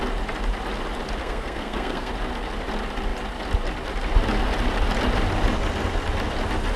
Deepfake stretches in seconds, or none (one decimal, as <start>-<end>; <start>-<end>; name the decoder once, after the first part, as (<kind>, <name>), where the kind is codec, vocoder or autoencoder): 1.2-2.1 (codec, SNAC)